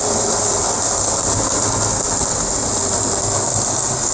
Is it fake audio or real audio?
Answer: real